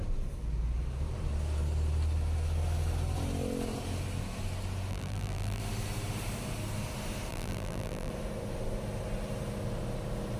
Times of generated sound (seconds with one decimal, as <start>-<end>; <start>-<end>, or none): 4.9-5.6; 7.3-8.1